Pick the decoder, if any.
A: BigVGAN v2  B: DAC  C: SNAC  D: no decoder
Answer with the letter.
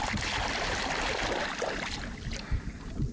D